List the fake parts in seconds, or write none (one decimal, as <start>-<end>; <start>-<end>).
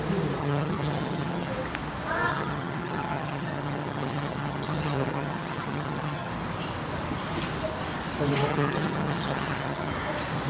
0.4-1.5; 2.3-6.3; 8.5-9.9